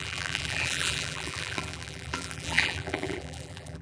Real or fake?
fake